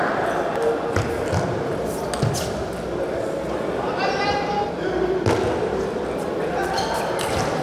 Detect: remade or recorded recorded